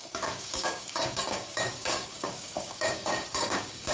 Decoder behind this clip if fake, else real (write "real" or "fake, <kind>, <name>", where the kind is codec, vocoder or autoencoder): fake, codec, DAC